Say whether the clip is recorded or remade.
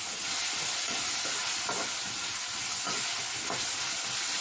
recorded